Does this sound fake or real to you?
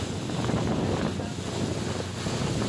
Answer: real